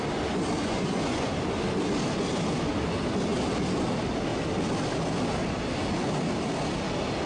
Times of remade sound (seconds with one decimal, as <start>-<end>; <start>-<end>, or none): 0.6-1.3